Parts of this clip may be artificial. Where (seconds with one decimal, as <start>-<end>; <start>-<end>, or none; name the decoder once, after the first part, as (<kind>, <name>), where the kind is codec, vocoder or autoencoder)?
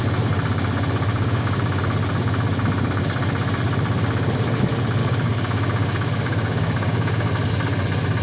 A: 1.1-1.8 (codec, DAC); 5.0-7.3